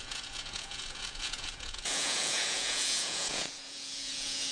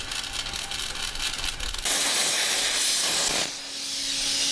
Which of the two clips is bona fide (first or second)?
second